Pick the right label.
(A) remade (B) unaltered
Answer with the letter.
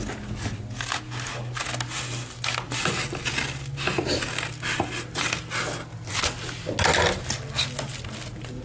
B